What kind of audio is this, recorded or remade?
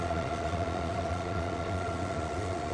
remade